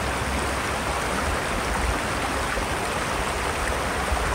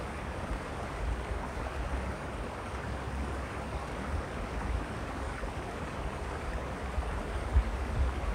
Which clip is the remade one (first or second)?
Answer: second